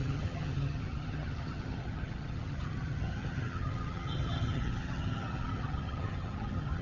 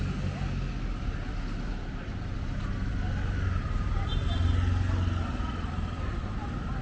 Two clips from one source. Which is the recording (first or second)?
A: second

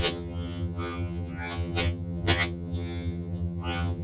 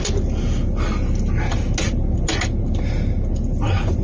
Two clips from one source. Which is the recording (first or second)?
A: second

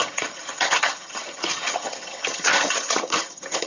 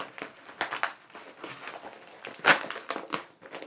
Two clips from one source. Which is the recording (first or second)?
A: second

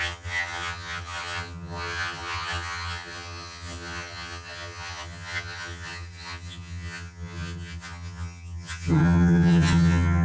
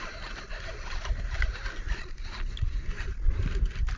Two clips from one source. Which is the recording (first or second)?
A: second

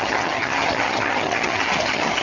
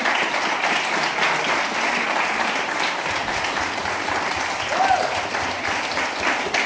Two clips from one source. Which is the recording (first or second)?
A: second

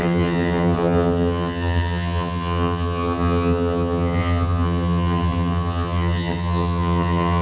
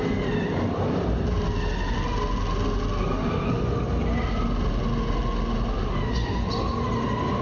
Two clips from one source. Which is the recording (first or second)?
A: second